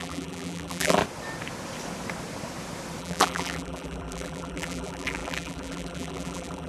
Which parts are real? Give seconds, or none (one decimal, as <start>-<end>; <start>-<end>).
1.0-3.0